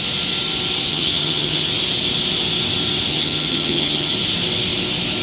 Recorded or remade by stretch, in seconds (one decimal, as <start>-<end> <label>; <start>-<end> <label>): 0.0-0.9 recorded; 0.9-1.7 remade; 1.7-3.1 recorded; 3.1-4.1 remade; 4.1-5.2 recorded

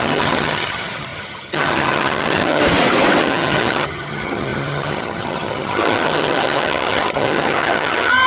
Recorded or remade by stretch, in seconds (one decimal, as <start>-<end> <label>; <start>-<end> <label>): 0.0-2.6 remade; 2.6-3.2 recorded; 3.2-8.3 remade

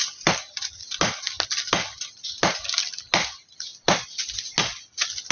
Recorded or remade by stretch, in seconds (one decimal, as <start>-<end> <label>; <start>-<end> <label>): 0.0-5.3 recorded

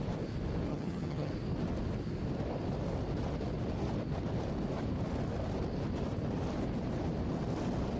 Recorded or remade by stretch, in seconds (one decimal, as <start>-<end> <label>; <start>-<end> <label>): 0.0-0.7 recorded; 0.7-1.3 remade; 1.3-8.0 recorded